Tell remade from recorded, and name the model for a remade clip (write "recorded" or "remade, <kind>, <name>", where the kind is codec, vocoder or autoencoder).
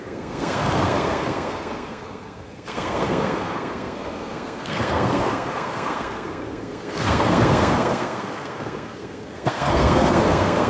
remade, codec, SNAC